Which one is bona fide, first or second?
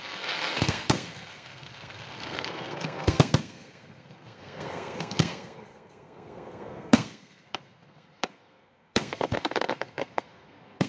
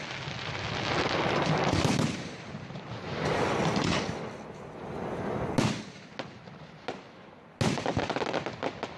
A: second